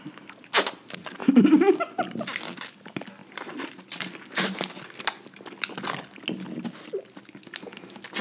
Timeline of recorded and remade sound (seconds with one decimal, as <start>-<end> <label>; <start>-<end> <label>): 0.0-8.2 recorded